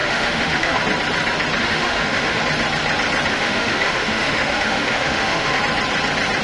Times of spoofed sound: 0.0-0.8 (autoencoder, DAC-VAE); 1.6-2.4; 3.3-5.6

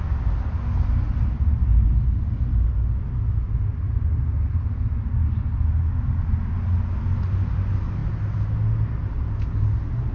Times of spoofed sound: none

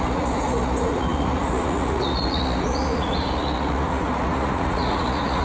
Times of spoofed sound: 0.0-5.4 (vocoder, Vocos)

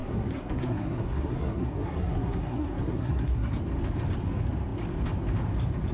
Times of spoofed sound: 0.0-3.5 (codec, SNAC)

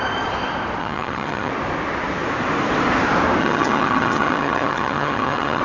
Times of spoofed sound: 0.8-1.5 (vocoder, HiFi-GAN); 3.4-5.6